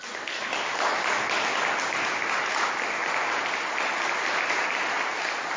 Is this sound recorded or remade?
recorded